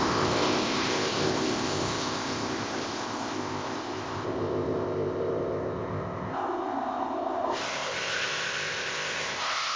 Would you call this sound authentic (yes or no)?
no